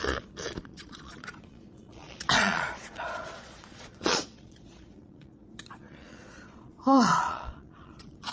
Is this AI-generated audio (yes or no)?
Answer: yes